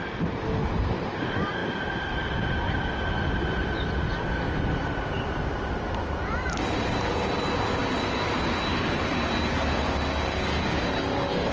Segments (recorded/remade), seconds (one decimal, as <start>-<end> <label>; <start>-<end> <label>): 0.0-11.5 recorded